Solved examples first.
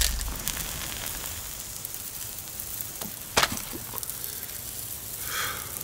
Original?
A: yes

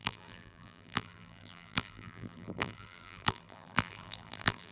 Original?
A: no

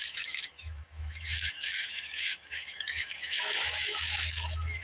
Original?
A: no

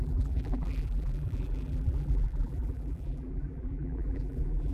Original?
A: no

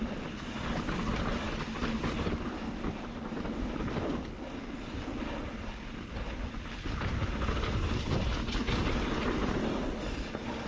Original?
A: yes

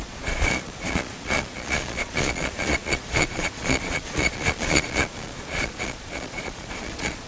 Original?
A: no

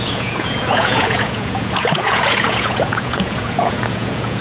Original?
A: no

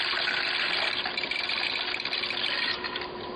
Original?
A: yes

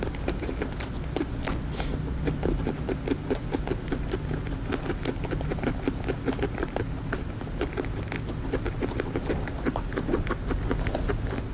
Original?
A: yes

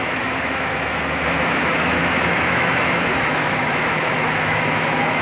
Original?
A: no